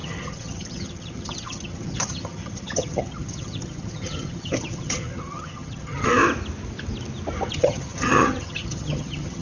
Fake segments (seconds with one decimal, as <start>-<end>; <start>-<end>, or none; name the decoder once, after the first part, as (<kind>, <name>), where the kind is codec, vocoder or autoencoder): 0.0-6.1 (vocoder, HiFi-GAN); 7.5-9.4

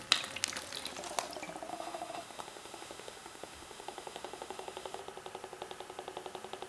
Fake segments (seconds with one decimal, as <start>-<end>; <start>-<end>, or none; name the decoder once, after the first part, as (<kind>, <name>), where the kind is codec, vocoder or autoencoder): 1.7-5.0 (autoencoder, DAC-VAE)

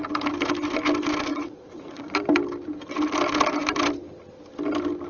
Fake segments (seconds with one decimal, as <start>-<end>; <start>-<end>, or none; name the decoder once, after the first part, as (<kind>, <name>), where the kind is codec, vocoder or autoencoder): 1.3-2.1 (vocoder, Vocos)

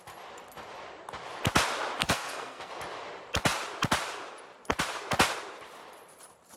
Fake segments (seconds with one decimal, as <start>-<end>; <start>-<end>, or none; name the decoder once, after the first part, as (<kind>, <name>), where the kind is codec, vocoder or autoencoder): 2.0-2.7 (codec, SNAC)

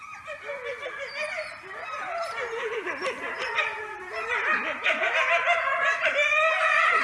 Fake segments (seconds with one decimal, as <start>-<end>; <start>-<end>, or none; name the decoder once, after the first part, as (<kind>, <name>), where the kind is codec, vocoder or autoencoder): 0.7-4.0 (vocoder, BigVGAN v2); 4.5-5.1

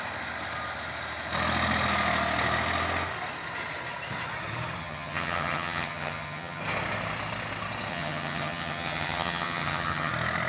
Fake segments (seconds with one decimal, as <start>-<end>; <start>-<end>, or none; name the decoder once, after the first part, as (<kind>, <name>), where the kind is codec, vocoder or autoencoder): 4.8-6.6 (vocoder, HiFi-GAN); 7.9-10.1

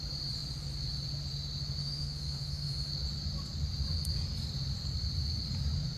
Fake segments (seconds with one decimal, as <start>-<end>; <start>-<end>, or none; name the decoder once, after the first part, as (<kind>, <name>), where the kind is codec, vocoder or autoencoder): 1.8-2.9 (autoencoder, DAC-VAE)